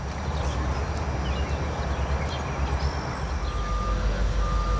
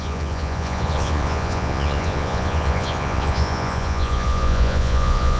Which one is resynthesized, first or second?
second